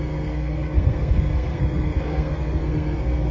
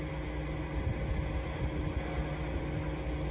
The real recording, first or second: second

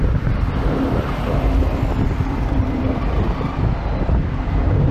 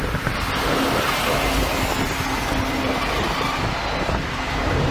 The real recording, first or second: second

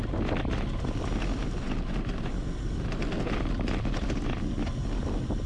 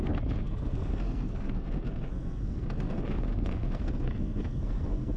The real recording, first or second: first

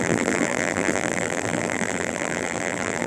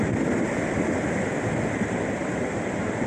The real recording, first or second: second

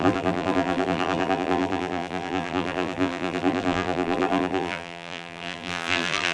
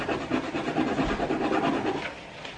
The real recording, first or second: second